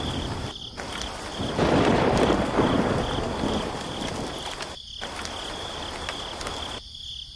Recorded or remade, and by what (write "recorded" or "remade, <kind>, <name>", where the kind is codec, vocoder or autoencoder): recorded